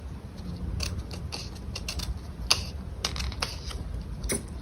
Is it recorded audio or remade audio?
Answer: recorded